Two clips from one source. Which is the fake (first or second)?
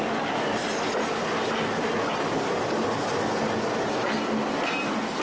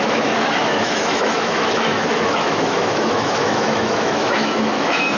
second